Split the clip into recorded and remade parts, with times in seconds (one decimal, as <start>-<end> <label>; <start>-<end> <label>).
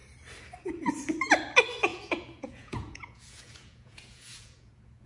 0.0-1.9 recorded; 1.9-5.1 remade